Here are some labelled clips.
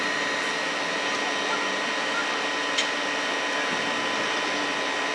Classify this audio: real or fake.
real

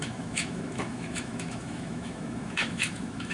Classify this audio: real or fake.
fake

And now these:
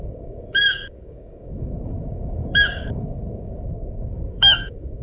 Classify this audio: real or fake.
fake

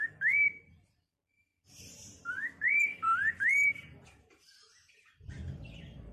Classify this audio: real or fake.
fake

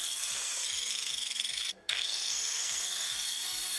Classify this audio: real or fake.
fake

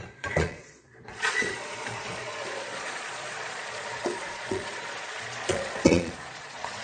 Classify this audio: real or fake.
fake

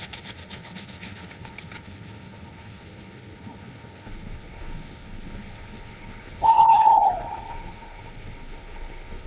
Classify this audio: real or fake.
fake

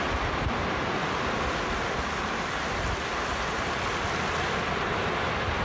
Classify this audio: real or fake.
real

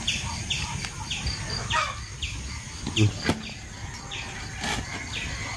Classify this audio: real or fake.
real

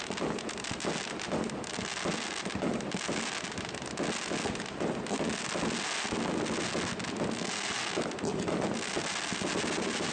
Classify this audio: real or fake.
real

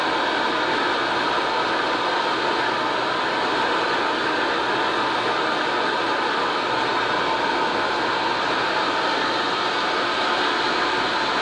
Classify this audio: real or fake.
real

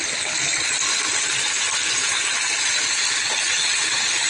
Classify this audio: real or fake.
real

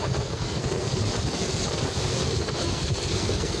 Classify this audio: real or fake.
fake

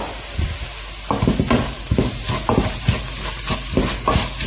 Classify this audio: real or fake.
real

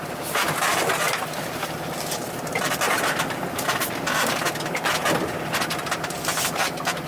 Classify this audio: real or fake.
fake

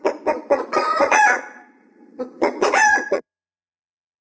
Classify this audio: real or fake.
fake